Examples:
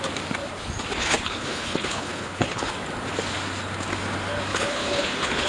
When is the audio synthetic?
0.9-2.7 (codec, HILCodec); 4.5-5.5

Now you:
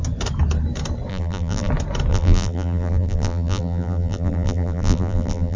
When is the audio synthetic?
1.1-1.7 (vocoder, BigVGAN v2); 2.1-5.6

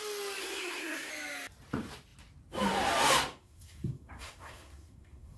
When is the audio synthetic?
0.4-1.1 (codec, SNAC); 3.3-5.4

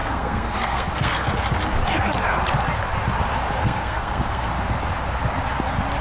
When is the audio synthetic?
0.0-1.3 (codec, SNAC); 3.6-4.5

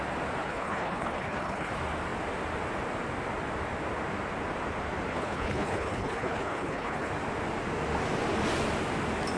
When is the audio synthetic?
0.4-1.7 (codec, HILCodec); 5.1-7.1

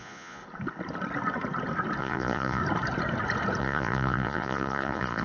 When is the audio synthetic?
0.0-0.4 (vocoder, Vocos); 2.0-2.6; 3.6-5.2

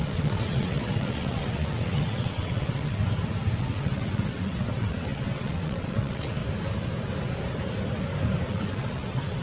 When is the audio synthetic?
0.0-3.0 (vocoder, WaveNeXt); 3.6-6.4; 8.5-9.4